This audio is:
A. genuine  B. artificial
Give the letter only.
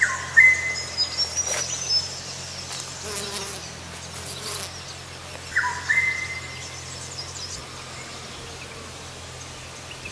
A